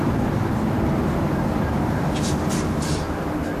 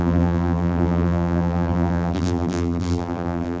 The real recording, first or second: first